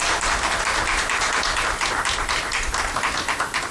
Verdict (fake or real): real